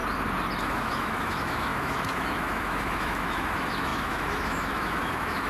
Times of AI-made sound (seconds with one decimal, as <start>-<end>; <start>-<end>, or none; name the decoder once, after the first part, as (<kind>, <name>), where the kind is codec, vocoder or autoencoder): 0.6-5.5 (autoencoder, DAC-VAE)